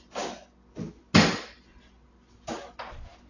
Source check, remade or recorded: recorded